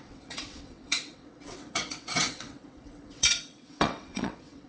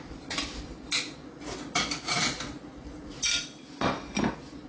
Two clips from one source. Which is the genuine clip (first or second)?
second